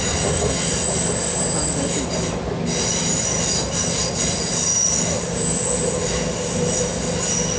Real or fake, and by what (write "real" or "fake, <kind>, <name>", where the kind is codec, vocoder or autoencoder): real